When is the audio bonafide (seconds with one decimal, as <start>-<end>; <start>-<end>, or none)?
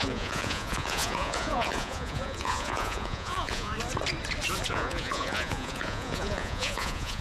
3.7-4.7